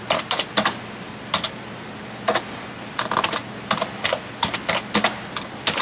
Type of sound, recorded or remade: recorded